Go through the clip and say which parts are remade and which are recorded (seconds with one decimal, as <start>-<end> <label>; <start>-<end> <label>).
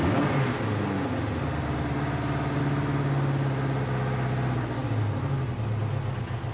0.0-6.5 recorded